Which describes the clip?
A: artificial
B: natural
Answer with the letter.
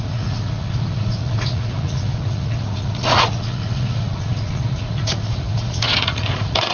A